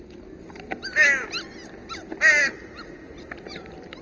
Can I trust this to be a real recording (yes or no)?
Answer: yes